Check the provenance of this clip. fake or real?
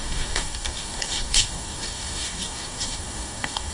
fake